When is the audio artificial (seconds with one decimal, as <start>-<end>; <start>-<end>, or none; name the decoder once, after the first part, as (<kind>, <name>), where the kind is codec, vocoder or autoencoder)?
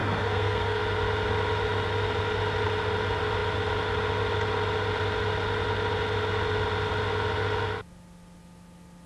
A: 0.0-0.8 (codec, SNAC)